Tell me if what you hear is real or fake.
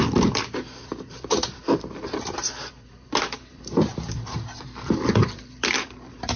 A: fake